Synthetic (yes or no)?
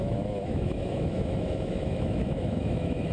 yes